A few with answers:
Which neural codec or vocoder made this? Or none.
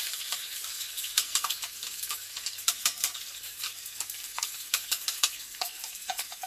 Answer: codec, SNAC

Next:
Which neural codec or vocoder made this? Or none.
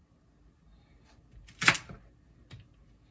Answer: none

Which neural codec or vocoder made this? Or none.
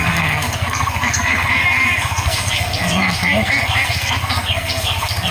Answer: codec, SNAC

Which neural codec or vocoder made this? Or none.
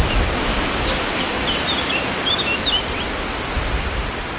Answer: none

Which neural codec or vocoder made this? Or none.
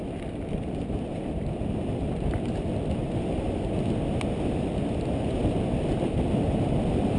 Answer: none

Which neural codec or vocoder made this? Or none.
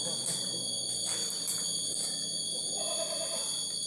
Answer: none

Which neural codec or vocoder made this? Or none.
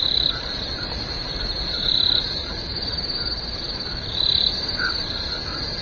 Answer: vocoder, BigVGAN v2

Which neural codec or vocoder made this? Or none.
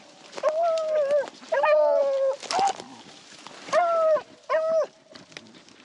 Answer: none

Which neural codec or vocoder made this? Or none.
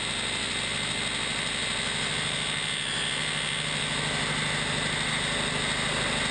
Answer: none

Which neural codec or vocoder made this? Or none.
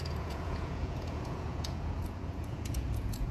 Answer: vocoder, Vocos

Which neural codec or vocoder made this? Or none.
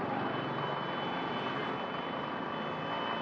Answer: none